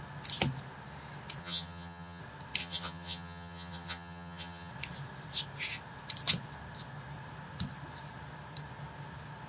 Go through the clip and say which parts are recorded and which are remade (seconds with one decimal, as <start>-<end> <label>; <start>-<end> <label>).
0.0-1.4 recorded; 1.4-2.2 remade; 2.2-2.6 recorded; 2.6-4.7 remade; 4.7-9.5 recorded